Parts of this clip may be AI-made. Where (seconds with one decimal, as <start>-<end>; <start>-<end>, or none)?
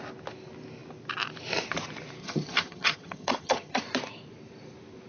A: 2.2-3.8